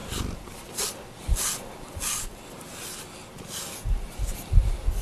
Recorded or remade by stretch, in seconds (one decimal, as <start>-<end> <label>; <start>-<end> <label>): 0.0-5.0 recorded